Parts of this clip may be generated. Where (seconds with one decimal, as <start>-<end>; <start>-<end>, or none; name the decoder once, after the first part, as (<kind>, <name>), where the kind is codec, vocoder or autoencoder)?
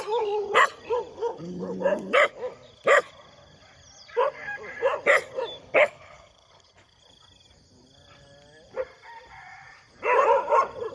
1.1-1.8 (codec, HILCodec); 5.6-7.0